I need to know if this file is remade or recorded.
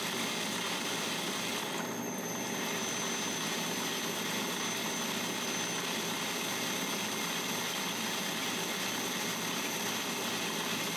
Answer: recorded